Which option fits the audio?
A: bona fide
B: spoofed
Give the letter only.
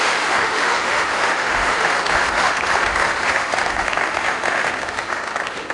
B